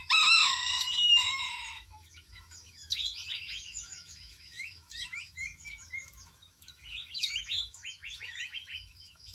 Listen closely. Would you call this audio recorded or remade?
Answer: remade